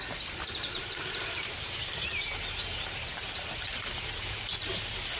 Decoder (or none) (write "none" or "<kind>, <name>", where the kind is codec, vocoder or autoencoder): none